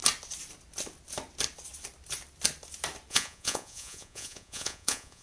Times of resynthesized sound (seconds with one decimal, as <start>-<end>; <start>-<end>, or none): 3.1-5.2